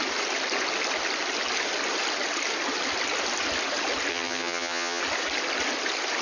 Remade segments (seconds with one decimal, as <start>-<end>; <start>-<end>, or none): 4.1-5.0